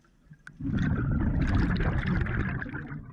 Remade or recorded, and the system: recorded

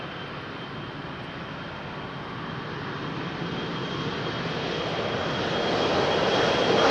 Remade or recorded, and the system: recorded